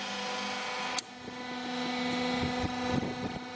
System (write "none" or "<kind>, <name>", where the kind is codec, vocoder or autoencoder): none